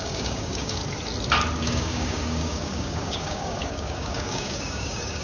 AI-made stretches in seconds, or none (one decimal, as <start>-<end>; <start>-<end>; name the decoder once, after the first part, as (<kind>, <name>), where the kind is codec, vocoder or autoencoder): 0.0-0.8 (codec, DAC); 1.6-5.2